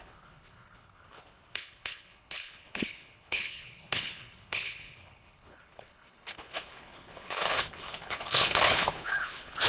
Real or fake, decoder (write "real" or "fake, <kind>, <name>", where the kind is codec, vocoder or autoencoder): fake, codec, HILCodec